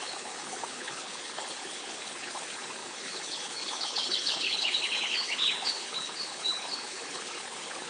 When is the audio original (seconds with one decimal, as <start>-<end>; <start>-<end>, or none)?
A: none